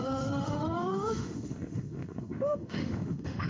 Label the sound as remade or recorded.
remade